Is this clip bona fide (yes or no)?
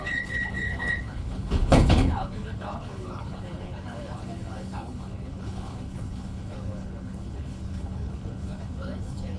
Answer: no